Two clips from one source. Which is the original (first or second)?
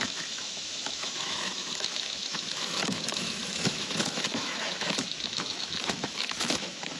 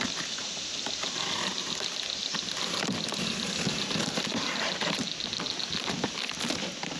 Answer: second